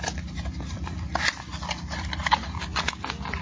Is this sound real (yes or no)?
yes